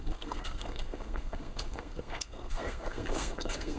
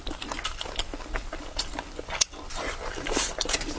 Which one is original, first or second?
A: second